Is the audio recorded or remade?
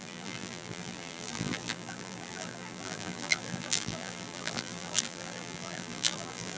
remade